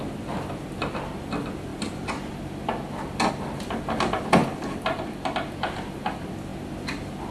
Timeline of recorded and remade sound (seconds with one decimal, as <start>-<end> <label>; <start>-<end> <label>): 0.0-7.3 recorded